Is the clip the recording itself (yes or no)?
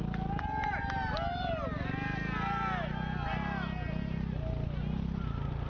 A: yes